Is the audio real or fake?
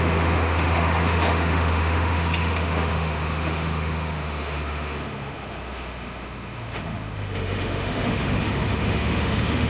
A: fake